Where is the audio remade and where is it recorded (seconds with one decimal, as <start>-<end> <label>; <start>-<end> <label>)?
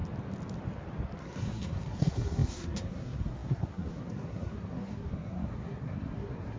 0.0-1.2 recorded; 1.2-6.6 remade